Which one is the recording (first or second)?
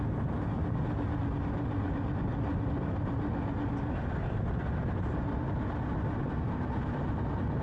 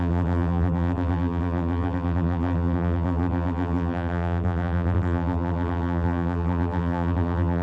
first